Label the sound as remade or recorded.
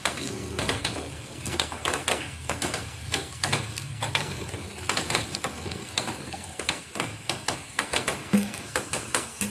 remade